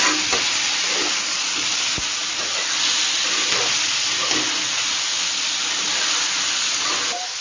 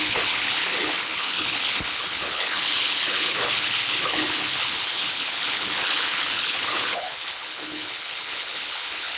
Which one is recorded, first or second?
first